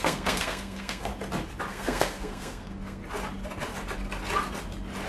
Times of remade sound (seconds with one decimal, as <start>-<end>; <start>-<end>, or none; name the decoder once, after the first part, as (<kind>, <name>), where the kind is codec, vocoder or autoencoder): 0.0-1.1 (codec, SNAC); 1.7-3.0